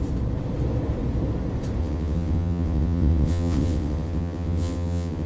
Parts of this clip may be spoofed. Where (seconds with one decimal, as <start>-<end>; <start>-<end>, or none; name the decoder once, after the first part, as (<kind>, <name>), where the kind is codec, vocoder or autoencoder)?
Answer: 1.8-5.3 (vocoder, WaveNeXt)